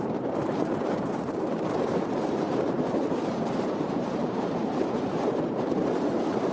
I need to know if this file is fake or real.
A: fake